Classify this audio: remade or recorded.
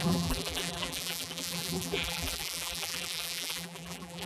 remade